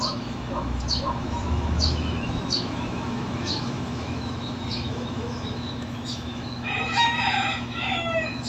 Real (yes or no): no